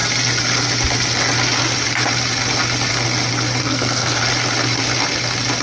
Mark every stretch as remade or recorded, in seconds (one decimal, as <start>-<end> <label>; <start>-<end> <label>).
0.0-3.6 recorded; 3.6-4.2 remade; 4.2-5.6 recorded